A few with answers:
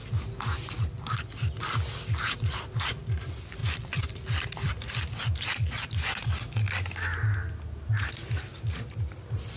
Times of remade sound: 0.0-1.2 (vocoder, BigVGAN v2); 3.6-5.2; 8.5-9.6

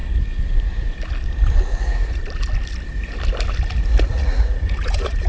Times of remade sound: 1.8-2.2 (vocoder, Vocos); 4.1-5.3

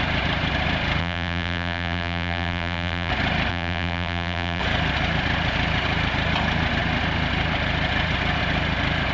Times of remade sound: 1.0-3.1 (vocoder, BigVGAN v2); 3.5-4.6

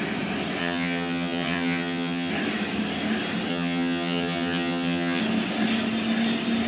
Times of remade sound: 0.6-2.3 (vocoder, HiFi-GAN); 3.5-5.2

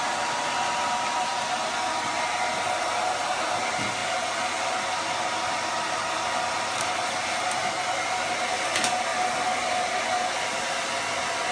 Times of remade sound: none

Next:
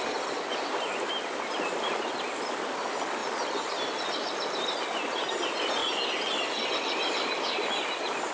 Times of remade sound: 5.8-7.7 (vocoder, BigVGAN v2)